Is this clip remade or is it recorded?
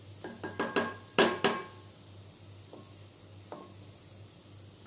recorded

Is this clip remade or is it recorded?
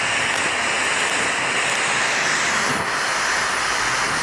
recorded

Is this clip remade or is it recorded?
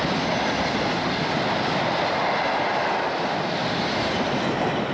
recorded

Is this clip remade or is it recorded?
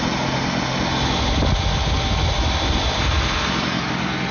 recorded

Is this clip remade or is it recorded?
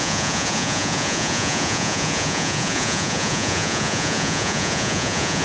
remade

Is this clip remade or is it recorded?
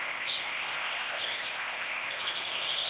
remade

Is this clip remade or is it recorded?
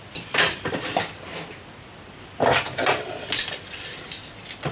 remade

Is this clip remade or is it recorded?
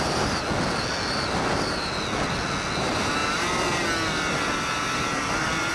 recorded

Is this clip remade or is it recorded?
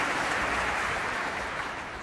remade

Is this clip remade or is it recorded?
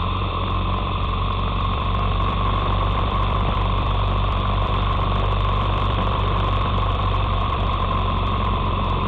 remade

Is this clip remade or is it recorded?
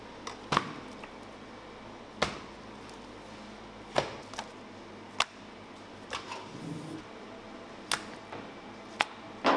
recorded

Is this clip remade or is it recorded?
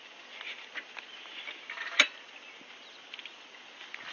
recorded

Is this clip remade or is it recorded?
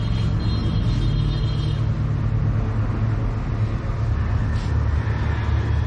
recorded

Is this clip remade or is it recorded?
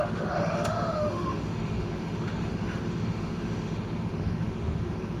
remade